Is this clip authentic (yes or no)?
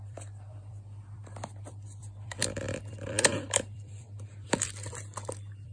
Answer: no